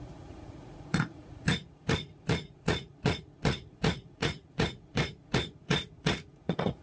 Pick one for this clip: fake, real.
fake